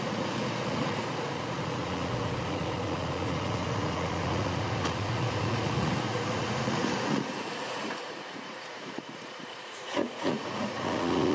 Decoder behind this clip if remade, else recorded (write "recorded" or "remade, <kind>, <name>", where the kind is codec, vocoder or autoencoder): remade, vocoder, Vocos